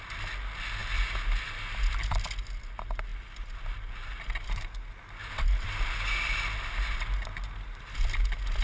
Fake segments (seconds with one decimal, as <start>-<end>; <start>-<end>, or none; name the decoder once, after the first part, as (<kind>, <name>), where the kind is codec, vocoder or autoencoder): none